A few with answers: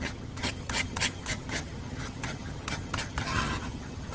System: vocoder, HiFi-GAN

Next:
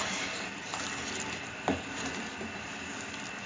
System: none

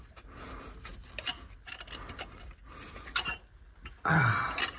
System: none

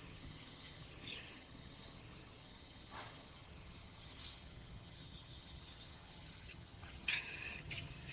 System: vocoder, HiFi-GAN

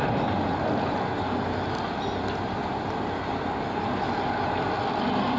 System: none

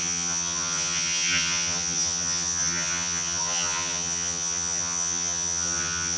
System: vocoder, HiFi-GAN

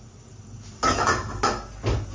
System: none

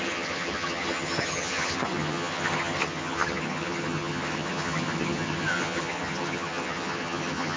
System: vocoder, HiFi-GAN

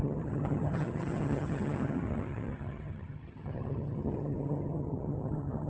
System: vocoder, HiFi-GAN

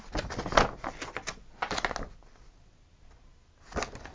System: none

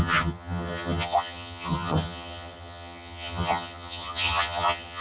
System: vocoder, HiFi-GAN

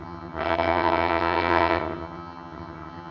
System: vocoder, HiFi-GAN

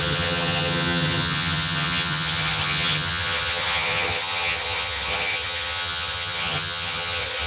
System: vocoder, HiFi-GAN